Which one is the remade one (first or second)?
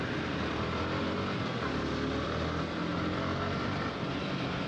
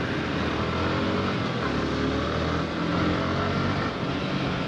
first